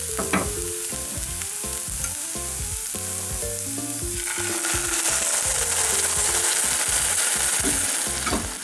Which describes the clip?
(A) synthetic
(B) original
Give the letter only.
B